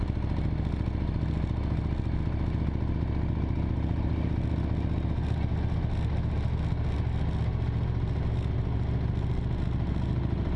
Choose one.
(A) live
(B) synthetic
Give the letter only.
A